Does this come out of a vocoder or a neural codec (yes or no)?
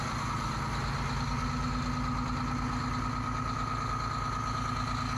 no